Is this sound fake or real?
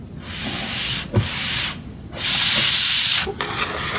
real